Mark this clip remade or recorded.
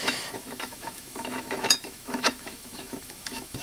remade